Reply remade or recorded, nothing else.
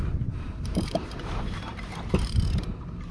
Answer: remade